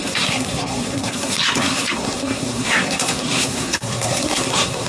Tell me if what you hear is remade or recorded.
remade